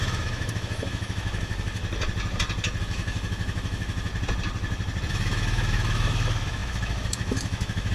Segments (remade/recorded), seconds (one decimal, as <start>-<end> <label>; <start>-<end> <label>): 0.0-1.8 remade; 1.8-2.8 recorded; 2.8-4.1 remade; 4.1-5.1 recorded; 5.1-7.9 remade